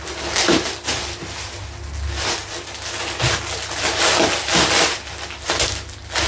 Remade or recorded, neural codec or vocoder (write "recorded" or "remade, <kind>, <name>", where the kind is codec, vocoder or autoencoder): recorded